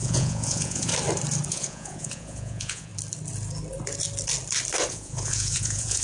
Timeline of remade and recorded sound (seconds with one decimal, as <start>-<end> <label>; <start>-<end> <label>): 0.0-0.9 remade; 0.9-1.5 recorded; 1.5-2.9 remade; 2.9-4.9 recorded; 4.9-6.0 remade